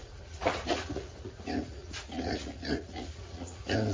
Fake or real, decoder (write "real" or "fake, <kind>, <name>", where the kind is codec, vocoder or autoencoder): fake, vocoder, Vocos